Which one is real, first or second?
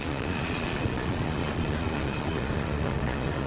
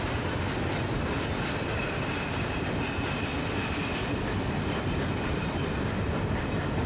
second